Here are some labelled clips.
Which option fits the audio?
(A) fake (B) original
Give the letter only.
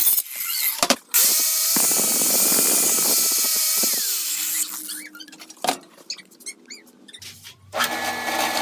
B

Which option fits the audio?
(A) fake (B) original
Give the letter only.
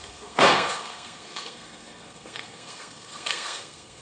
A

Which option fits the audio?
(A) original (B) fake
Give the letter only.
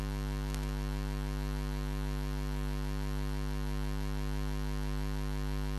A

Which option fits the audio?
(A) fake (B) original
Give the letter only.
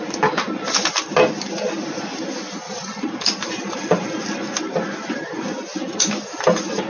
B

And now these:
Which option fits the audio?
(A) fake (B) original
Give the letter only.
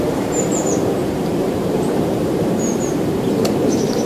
A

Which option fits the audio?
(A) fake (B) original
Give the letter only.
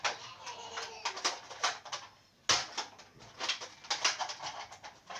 B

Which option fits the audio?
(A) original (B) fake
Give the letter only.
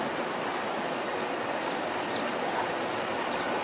A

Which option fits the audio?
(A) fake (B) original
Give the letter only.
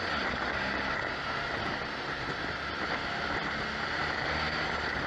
B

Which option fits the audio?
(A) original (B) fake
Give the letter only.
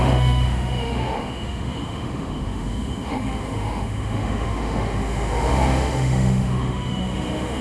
B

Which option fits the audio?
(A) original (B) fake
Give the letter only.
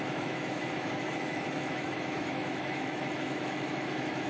B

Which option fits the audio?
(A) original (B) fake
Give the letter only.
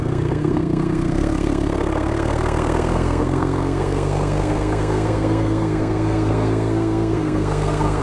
B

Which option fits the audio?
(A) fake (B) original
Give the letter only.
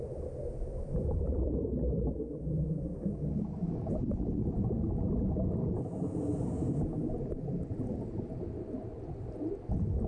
A